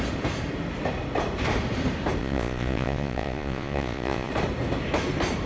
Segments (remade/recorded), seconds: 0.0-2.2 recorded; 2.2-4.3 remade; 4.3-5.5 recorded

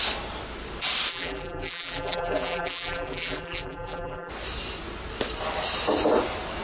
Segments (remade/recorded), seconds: 0.0-1.1 recorded; 1.1-4.3 remade; 4.3-6.6 recorded

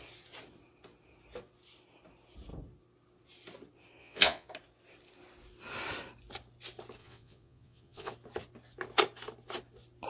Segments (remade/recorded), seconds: 0.0-4.0 recorded; 4.0-4.5 remade; 4.5-7.0 recorded; 7.0-8.1 remade; 8.1-10.1 recorded

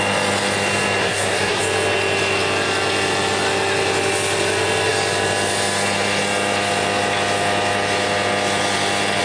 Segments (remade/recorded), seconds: 0.0-1.0 recorded; 1.0-1.6 remade; 1.6-9.2 recorded

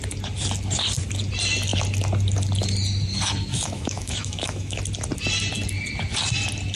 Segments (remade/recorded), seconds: 0.0-3.5 recorded; 3.5-4.8 remade; 4.8-6.8 recorded

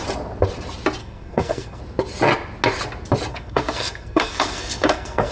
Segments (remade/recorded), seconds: 0.0-1.0 recorded; 1.0-1.8 remade; 1.8-3.3 recorded; 3.3-5.3 remade